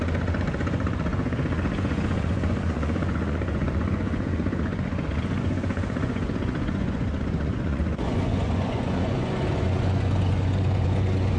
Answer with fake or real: fake